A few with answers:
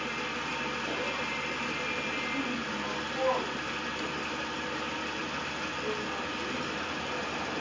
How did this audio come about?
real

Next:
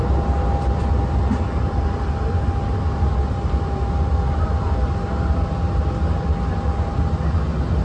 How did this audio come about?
real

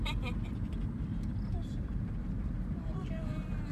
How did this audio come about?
fake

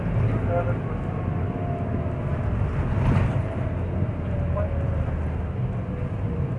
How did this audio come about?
real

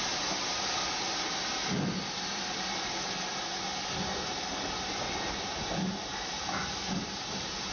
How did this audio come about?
real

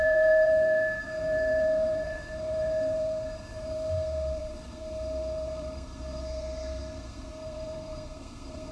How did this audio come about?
fake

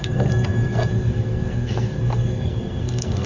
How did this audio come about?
fake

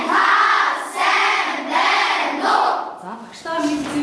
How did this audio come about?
real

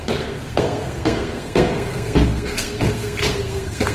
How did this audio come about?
fake